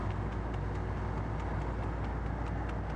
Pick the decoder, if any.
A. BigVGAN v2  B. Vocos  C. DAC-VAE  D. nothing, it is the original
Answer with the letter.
D